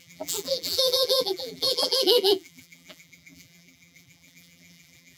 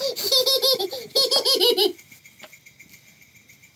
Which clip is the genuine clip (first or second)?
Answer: second